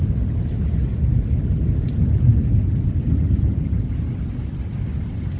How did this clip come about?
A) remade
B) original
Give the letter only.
B